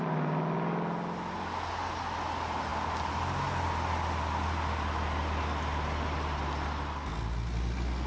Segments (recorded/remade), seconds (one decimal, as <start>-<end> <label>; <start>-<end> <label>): 0.0-8.1 recorded